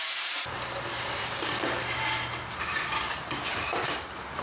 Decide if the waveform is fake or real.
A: fake